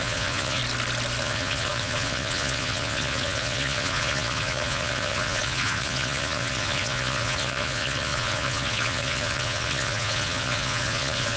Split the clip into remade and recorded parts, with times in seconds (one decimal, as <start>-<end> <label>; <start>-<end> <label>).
0.0-0.6 remade; 0.6-1.2 recorded; 1.2-11.4 remade